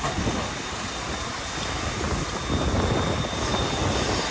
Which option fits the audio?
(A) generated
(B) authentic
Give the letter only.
B